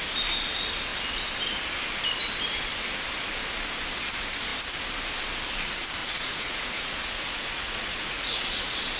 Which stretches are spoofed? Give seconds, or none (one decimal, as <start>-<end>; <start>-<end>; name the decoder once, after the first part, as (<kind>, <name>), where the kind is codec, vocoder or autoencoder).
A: 6.0-8.6 (vocoder, Vocos)